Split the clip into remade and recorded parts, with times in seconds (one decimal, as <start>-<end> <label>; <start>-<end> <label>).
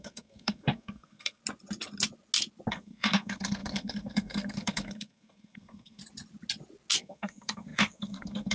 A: 0.0-1.4 remade; 1.4-2.7 recorded; 2.7-6.0 remade; 6.0-7.0 recorded; 7.0-8.5 remade